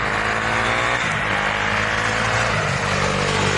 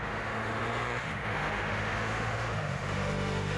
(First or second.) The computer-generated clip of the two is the second